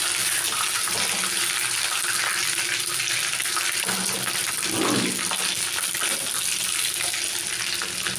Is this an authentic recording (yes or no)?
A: yes